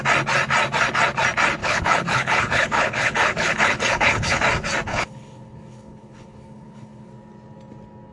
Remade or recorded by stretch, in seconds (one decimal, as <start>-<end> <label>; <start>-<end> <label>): 0.0-1.6 recorded; 1.6-4.4 remade; 4.4-4.9 recorded; 4.9-7.1 remade; 7.1-8.1 recorded